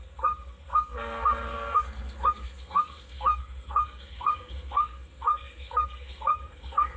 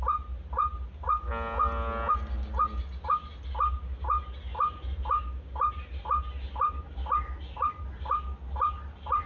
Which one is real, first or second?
second